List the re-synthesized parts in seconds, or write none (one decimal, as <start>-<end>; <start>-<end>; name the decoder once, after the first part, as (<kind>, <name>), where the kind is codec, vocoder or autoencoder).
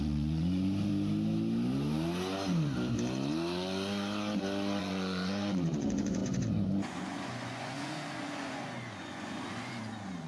0.0-0.9 (vocoder, Vocos); 4.8-10.3